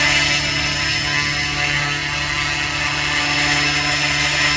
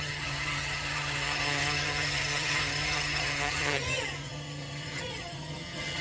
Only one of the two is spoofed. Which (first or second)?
second